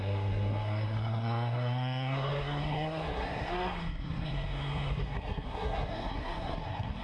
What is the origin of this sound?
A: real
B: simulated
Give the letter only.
B